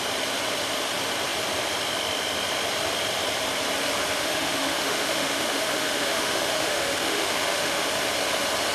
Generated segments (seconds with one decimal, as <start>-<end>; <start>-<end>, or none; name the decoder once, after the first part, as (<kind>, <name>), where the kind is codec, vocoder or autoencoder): 4.2-7.9 (autoencoder, DAC-VAE)